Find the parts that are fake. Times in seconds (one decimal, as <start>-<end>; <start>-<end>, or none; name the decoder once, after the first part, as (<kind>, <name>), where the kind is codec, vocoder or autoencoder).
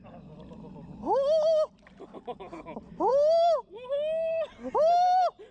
none